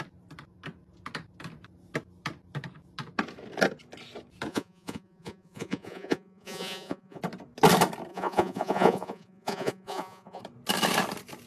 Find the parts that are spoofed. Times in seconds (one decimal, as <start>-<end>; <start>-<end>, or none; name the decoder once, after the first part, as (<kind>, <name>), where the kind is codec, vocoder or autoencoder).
4.5-7.2 (vocoder, Vocos); 8.1-10.4